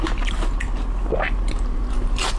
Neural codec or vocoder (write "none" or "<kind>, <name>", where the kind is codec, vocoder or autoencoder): vocoder, BigVGAN v2